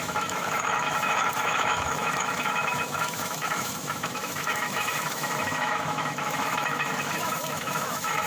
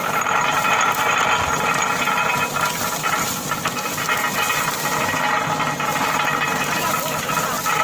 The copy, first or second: first